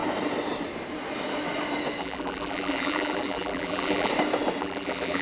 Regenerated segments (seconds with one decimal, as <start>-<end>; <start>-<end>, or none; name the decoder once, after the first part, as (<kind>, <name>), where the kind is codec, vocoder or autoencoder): 2.0-4.1 (vocoder, BigVGAN v2); 4.6-5.2